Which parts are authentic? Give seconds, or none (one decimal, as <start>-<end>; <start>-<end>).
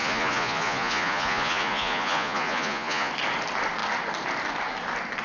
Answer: 3.1-5.2